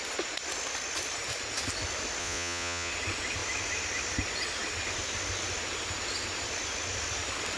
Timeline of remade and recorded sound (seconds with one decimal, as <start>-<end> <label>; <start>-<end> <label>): 0.0-2.2 recorded; 2.2-2.9 remade; 2.9-7.6 recorded